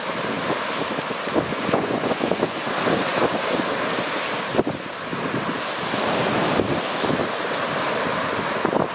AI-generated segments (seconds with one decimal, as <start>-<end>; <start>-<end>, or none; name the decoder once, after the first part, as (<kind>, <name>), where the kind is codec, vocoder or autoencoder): 1.5-2.6 (vocoder, Vocos)